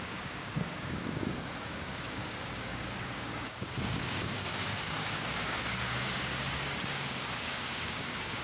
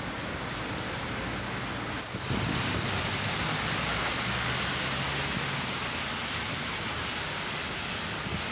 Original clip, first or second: second